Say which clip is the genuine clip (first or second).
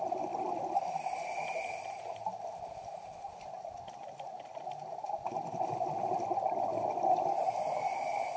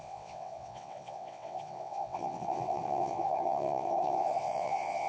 first